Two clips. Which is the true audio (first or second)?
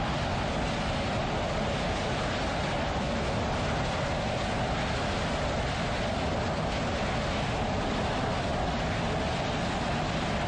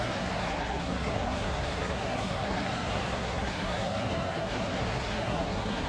first